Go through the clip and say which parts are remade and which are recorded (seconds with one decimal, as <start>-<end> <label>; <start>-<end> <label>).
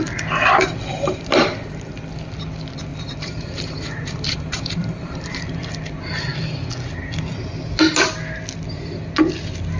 0.0-0.9 recorded; 0.9-1.9 remade; 1.9-2.9 recorded; 2.9-5.4 remade; 5.4-9.8 recorded